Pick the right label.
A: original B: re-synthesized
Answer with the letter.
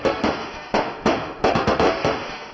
B